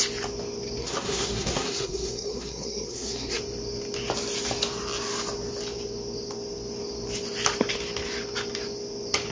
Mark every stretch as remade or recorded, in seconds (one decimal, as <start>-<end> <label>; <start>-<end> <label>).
0.0-0.8 recorded; 0.8-3.4 remade; 3.4-9.3 recorded